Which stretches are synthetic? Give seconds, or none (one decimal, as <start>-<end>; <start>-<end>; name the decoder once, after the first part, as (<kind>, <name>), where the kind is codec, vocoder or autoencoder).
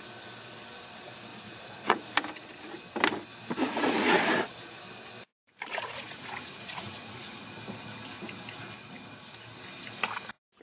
1.3-2.0 (vocoder, Vocos); 3.6-4.2; 5.7-7.3